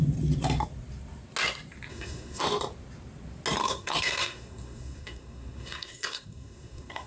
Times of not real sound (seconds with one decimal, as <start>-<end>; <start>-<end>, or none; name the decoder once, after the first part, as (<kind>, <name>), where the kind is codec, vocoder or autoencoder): 1.9-2.4 (codec, SNAC); 3.6-7.1